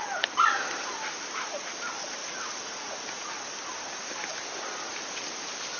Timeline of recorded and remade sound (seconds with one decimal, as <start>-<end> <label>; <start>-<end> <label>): 0.0-2.2 recorded; 2.2-3.3 remade; 3.3-5.8 recorded